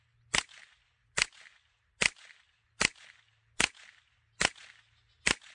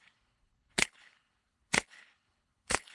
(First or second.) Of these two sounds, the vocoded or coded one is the second